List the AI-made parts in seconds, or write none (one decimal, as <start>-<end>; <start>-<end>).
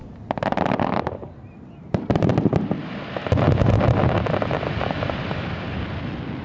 1.8-2.8